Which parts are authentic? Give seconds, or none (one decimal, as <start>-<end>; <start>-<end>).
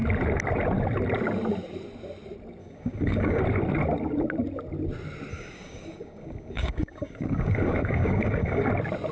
0.0-2.6; 3.4-5.3; 8.7-9.1